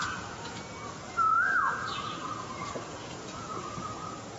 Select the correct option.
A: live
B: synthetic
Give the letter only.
B